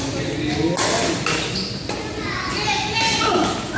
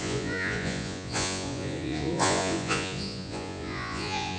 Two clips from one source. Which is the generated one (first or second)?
second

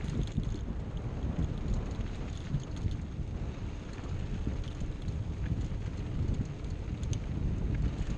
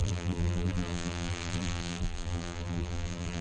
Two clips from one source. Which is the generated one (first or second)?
second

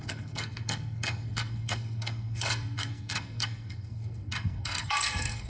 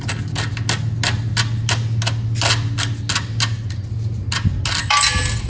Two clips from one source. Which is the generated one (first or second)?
first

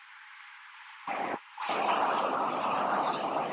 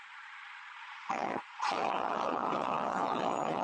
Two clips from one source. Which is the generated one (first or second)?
second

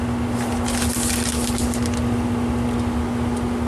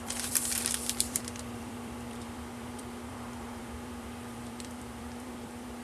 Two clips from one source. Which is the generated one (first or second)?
second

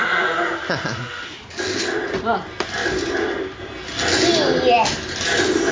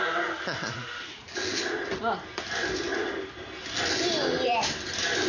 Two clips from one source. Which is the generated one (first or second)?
second